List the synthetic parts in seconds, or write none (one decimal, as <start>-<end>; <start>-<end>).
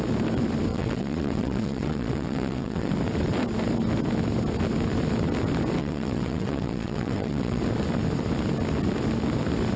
0.7-2.9; 5.8-7.6